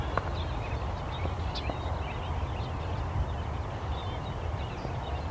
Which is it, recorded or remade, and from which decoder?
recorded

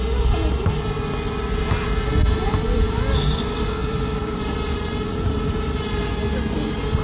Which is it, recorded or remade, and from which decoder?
recorded